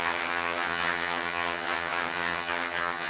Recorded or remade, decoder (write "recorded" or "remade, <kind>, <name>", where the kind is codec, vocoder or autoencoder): remade, vocoder, HiFi-GAN